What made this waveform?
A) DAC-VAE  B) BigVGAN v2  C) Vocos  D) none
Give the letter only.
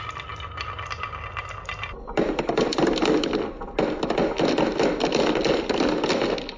D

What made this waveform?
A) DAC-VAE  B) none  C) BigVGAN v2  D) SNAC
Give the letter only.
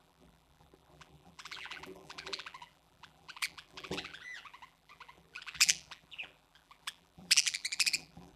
C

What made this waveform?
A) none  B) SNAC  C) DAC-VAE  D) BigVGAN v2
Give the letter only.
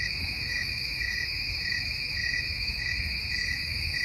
C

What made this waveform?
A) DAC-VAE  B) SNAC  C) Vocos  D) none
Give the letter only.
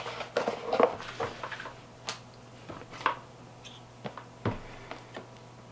D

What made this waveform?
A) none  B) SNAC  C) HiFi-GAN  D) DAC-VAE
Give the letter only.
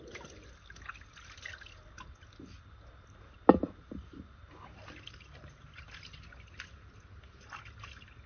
A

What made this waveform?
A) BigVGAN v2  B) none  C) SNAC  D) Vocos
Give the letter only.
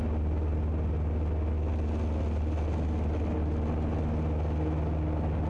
B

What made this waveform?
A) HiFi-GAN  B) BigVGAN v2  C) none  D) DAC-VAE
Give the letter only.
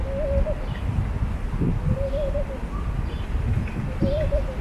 C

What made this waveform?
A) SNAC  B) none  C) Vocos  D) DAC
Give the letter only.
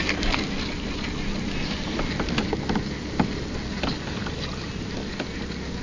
B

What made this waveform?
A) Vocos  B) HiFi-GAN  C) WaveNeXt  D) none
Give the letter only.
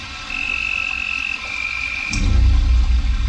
D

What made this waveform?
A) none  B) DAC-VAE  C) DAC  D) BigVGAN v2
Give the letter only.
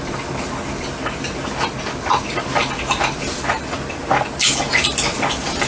A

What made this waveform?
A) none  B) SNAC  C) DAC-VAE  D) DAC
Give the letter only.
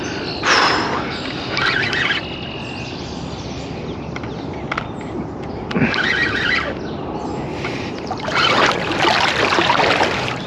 A